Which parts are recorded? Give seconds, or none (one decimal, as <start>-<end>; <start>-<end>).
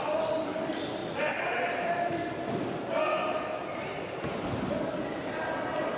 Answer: 0.0-6.0